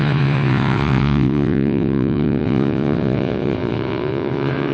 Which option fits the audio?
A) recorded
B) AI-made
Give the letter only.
B